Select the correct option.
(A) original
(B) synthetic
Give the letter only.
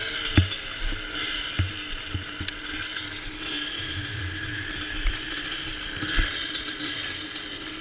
A